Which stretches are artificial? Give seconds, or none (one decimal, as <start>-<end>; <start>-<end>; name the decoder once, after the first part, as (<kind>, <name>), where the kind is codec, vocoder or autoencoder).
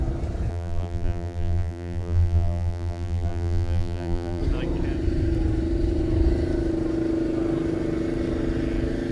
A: 0.5-4.4 (vocoder, BigVGAN v2)